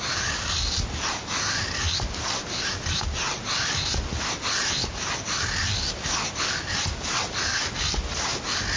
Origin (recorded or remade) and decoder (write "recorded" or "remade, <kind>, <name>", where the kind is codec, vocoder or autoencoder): recorded